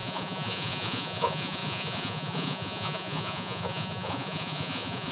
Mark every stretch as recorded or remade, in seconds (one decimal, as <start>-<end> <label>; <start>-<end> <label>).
0.0-5.1 remade